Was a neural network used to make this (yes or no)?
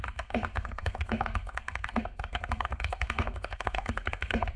yes